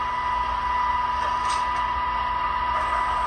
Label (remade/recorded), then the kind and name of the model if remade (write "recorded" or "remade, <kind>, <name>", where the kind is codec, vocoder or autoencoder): recorded